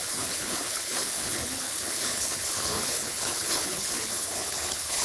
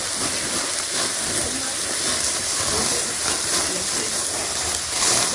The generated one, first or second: first